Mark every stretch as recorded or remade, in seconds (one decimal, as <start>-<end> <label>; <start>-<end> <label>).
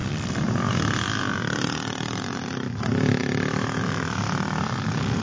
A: 0.0-5.2 recorded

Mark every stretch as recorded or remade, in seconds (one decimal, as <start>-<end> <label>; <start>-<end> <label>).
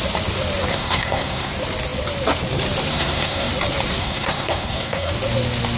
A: 0.0-0.7 recorded; 0.7-1.5 remade; 1.5-2.9 recorded; 2.9-3.5 remade; 3.5-4.0 recorded; 4.0-5.1 remade; 5.1-5.8 recorded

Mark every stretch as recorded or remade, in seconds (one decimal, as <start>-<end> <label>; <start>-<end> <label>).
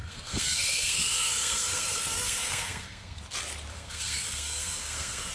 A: 0.0-3.2 remade; 3.2-3.7 recorded; 3.7-5.3 remade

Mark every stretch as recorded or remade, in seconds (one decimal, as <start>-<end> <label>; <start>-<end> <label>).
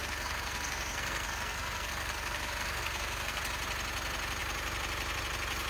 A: 0.0-3.4 remade; 3.4-5.7 recorded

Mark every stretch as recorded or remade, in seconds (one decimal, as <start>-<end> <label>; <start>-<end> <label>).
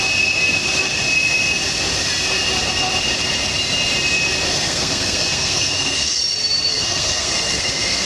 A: 0.0-4.5 recorded; 4.5-6.2 remade; 6.2-6.7 recorded; 6.7-8.1 remade